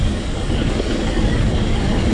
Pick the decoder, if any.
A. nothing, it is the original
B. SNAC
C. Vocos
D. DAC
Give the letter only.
D